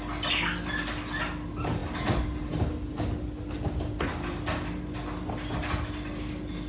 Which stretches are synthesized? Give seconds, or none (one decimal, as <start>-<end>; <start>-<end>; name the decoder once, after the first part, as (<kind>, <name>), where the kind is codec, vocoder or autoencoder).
none